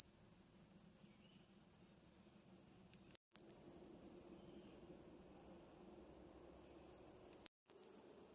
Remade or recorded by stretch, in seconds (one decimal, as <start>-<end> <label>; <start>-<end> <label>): 0.0-8.3 recorded